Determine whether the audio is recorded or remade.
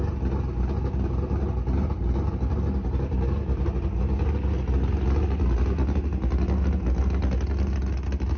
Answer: recorded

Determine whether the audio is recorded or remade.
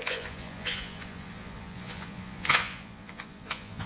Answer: remade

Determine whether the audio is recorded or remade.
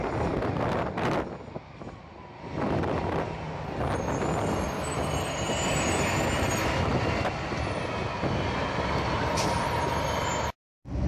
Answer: recorded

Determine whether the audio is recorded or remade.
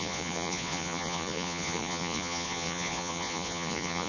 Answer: remade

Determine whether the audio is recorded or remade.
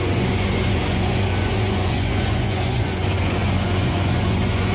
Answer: remade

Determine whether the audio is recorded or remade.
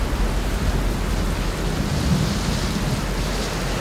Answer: recorded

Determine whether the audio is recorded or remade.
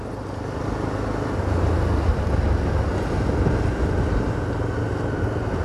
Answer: recorded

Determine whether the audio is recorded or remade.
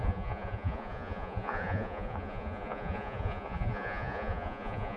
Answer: remade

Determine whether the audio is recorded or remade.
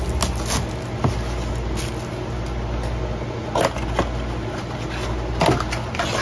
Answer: recorded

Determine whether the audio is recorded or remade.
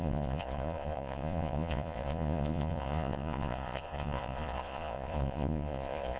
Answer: remade